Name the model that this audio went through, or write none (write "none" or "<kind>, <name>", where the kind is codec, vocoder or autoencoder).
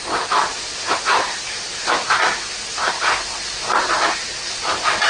none